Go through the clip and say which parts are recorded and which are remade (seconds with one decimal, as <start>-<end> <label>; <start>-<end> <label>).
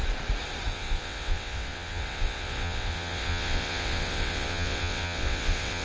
0.0-0.7 recorded; 0.7-5.8 remade